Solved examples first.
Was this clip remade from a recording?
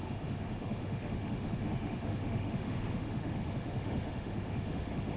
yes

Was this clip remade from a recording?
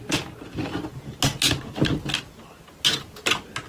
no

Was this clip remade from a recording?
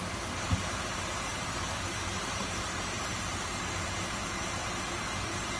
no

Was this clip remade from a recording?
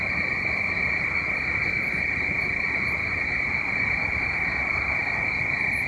no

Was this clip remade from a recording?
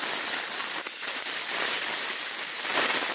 no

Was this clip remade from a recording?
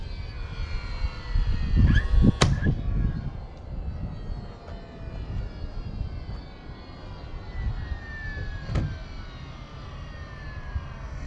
no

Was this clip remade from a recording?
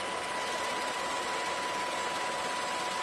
no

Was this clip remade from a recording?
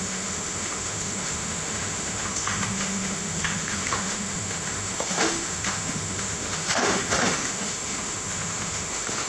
yes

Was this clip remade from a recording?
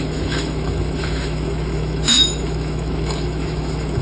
yes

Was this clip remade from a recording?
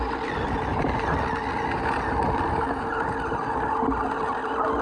no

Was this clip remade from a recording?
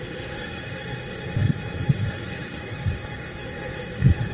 yes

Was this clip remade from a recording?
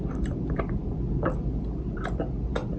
no